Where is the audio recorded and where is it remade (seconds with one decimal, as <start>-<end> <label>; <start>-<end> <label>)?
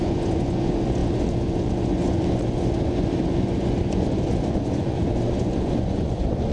0.0-6.5 remade